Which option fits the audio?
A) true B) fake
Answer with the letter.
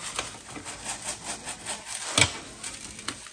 A